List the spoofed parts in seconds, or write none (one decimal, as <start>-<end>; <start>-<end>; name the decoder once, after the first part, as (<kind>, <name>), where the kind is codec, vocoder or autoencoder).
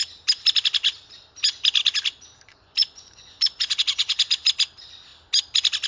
2.5-4.4 (vocoder, Vocos)